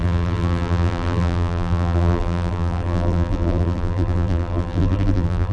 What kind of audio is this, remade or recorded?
remade